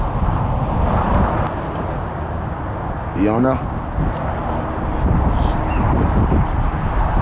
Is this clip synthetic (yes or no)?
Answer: no